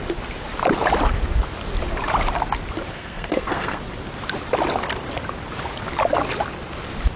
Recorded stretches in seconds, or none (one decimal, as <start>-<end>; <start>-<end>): 0.0-2.9; 3.8-7.2